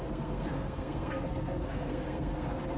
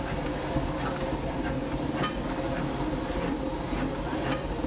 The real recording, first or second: second